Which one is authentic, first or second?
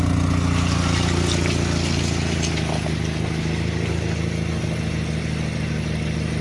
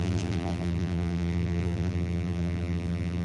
first